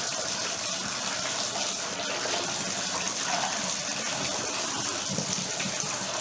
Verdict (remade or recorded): recorded